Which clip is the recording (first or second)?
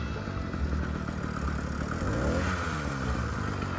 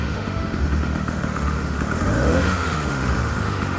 first